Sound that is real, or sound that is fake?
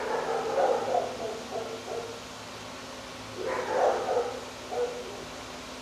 real